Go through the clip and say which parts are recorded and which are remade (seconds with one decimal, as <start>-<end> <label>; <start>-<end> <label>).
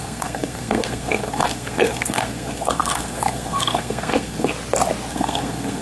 0.0-4.5 remade; 4.5-5.1 recorded; 5.1-5.8 remade